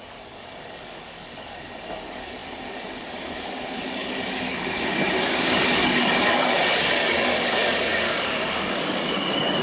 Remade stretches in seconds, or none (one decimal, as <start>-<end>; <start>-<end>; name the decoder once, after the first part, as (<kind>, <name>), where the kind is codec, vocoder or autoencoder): 0.0-9.6 (codec, DAC)